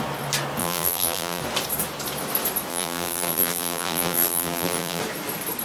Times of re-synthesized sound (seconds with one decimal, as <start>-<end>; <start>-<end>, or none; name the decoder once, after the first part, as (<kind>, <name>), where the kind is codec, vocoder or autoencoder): 0.6-1.4 (vocoder, BigVGAN v2); 2.7-5.0